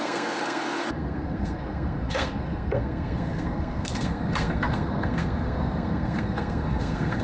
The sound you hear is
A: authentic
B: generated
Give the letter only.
B